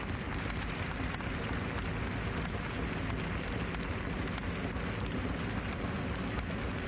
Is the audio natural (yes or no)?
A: yes